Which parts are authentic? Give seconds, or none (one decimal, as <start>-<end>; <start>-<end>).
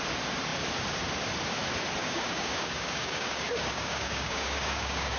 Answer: 0.0-2.0